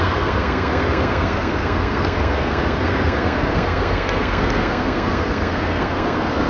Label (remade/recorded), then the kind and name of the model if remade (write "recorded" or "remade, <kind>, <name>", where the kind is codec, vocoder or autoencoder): remade, codec, SNAC